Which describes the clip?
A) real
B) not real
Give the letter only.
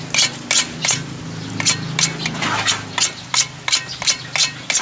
A